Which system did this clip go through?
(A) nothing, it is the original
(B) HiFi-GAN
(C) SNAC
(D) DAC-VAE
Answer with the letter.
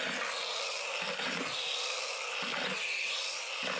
A